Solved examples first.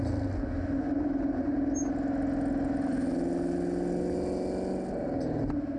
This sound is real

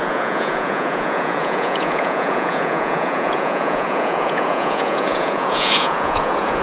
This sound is fake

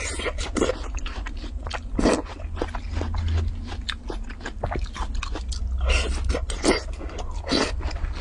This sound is real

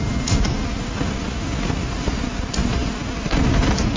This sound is real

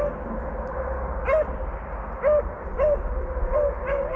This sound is real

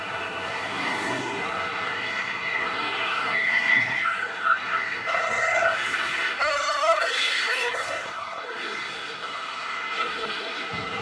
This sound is fake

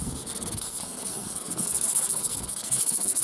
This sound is fake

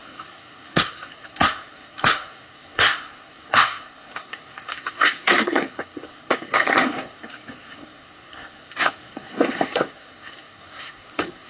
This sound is fake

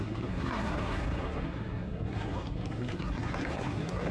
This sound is fake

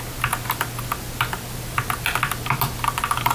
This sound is real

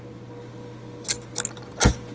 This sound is real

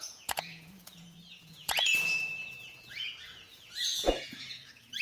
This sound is fake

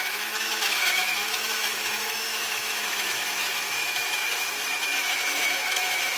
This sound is fake